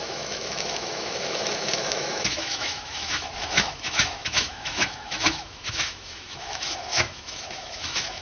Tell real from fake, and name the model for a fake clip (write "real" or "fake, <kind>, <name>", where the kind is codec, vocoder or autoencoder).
fake, autoencoder, DAC-VAE